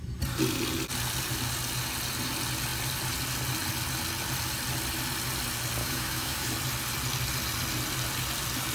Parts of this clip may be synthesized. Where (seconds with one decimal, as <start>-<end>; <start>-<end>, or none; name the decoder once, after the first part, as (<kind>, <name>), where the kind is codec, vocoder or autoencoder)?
5.8-6.5 (autoencoder, DAC-VAE)

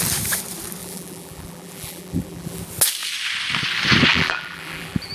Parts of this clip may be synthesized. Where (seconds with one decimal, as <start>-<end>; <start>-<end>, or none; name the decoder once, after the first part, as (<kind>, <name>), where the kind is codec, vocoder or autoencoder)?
0.8-2.6 (vocoder, BigVGAN v2); 4.1-5.1

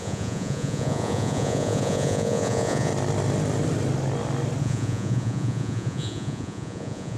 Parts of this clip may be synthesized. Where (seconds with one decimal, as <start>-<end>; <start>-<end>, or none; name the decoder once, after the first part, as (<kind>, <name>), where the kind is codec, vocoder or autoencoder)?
0.0-2.9 (vocoder, Vocos); 4.6-7.2

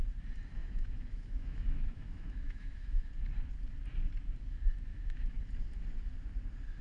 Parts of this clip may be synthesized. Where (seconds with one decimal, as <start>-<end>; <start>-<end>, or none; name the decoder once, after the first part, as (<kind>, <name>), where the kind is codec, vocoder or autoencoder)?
0.6-3.1 (autoencoder, DAC-VAE); 4.9-5.4